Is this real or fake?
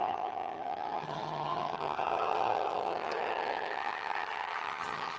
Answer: fake